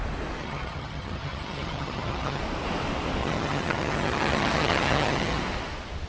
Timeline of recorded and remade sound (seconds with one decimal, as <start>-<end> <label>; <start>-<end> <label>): 0.0-0.4 recorded; 0.4-2.4 remade; 2.4-3.2 recorded; 3.2-5.4 remade; 5.4-6.1 recorded